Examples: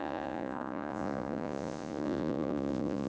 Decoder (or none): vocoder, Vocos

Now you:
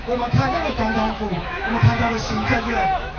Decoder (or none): autoencoder, DAC-VAE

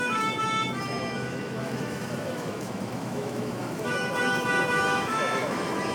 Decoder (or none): autoencoder, DAC-VAE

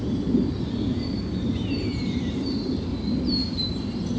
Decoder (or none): none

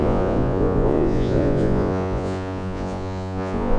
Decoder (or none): vocoder, Vocos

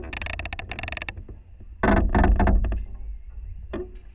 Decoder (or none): none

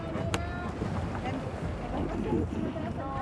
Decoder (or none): none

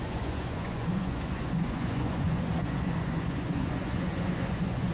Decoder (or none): vocoder, Vocos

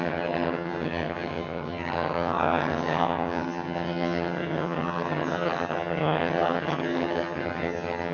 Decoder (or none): vocoder, HiFi-GAN